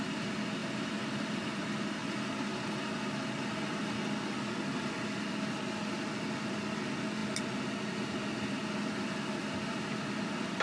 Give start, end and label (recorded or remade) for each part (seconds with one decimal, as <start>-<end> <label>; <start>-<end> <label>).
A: 0.0-0.6 recorded; 0.6-1.6 remade; 1.6-10.6 recorded